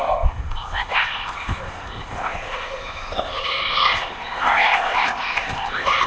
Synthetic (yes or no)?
yes